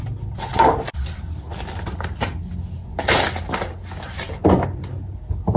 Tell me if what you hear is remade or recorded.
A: recorded